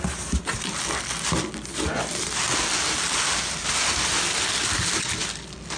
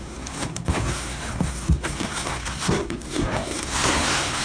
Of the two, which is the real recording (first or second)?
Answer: first